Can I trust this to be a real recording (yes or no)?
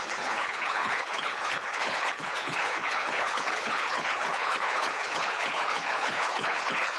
no